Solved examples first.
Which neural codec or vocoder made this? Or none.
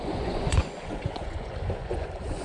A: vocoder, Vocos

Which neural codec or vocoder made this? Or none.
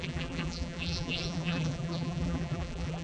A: vocoder, BigVGAN v2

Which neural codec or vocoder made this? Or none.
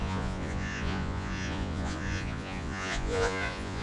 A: vocoder, Vocos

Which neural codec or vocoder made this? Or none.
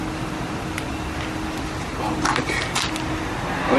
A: none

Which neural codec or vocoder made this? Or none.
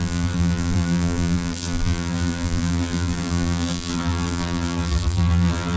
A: vocoder, BigVGAN v2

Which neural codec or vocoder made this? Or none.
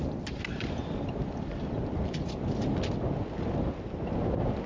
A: none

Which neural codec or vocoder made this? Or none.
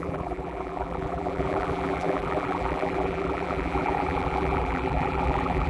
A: vocoder, BigVGAN v2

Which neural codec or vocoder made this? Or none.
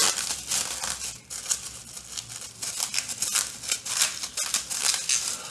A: none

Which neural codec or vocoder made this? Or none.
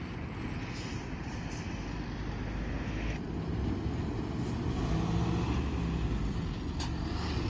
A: none